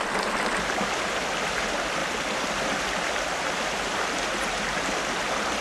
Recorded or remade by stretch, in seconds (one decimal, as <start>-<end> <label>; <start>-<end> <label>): 0.0-5.6 recorded